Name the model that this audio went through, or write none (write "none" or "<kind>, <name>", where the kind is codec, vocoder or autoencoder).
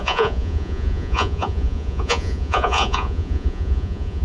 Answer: vocoder, Vocos